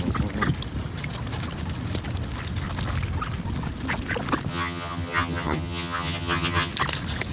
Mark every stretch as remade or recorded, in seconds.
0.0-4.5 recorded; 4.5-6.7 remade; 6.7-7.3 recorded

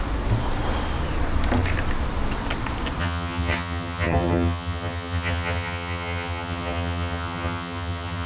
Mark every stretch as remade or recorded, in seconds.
0.0-3.0 recorded; 3.0-8.3 remade

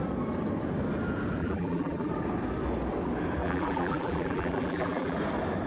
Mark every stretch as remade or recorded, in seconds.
0.0-1.4 recorded; 1.4-2.1 remade; 2.1-3.4 recorded; 3.4-5.2 remade; 5.2-5.7 recorded

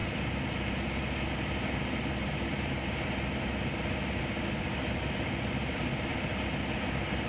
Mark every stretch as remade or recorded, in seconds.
0.0-7.3 recorded

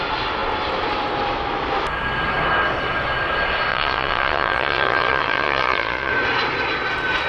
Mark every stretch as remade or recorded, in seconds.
0.0-3.7 recorded; 3.7-6.1 remade; 6.1-7.3 recorded

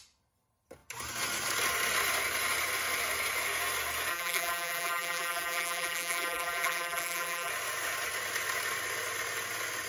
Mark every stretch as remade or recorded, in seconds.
0.0-4.1 recorded; 4.1-7.5 remade; 7.5-9.9 recorded

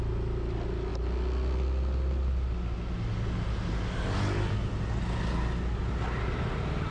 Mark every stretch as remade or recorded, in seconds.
0.0-6.9 recorded

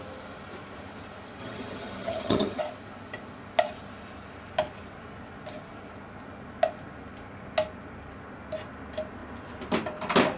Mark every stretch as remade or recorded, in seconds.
0.0-1.4 recorded; 1.4-2.6 remade; 2.6-10.4 recorded